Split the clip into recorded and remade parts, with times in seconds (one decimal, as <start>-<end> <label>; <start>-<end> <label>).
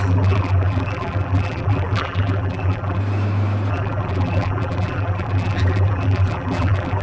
0.0-3.0 remade; 3.0-3.7 recorded; 3.7-7.0 remade